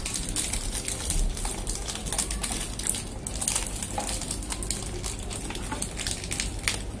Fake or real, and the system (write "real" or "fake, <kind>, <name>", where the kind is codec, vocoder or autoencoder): real